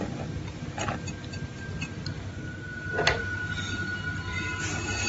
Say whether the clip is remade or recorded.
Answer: recorded